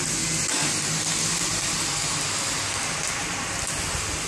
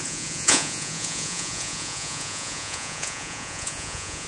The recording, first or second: first